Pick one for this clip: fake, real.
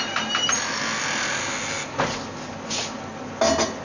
real